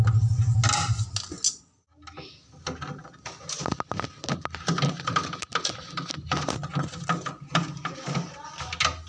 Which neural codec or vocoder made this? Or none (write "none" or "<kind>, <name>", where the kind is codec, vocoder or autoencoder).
none